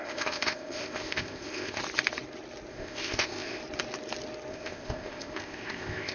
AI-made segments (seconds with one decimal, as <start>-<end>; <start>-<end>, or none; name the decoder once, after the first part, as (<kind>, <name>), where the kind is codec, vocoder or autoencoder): 0.0-1.8 (codec, ZipCodec); 2.7-3.6; 4.5-6.1